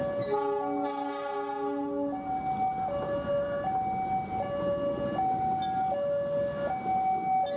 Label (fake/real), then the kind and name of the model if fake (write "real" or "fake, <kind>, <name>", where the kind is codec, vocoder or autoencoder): real